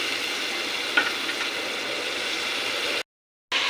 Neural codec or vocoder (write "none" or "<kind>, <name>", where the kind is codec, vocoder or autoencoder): none